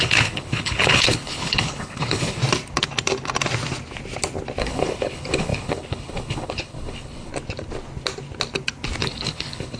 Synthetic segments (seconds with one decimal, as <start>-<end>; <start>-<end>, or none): 0.0-2.4; 4.6-7.3; 9.0-9.8